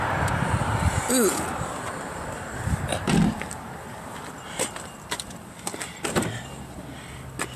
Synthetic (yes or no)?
yes